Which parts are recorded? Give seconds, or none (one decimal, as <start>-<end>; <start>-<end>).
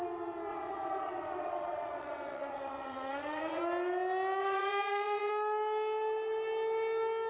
0.0-0.5; 3.6-4.4; 5.3-7.3